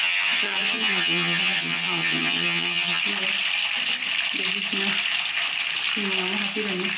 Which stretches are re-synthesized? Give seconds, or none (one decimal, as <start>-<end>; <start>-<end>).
0.0-3.0